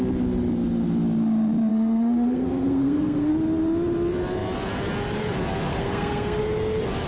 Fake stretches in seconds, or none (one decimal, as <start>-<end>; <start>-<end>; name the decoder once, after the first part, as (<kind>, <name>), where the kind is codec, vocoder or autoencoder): 1.7-3.3 (codec, SNAC); 5.7-6.4